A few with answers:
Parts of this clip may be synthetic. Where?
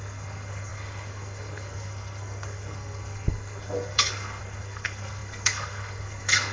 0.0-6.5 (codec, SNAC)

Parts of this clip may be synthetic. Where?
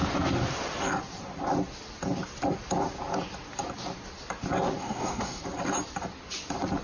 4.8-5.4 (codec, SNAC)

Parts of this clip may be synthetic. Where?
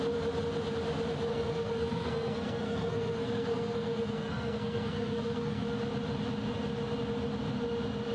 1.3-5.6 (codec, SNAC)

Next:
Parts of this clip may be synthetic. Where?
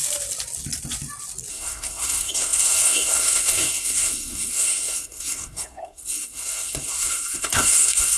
1.5-8.2 (codec, SNAC)